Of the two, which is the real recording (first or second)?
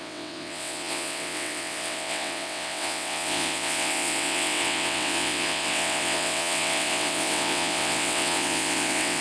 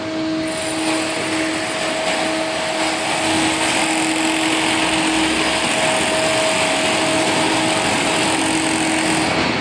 second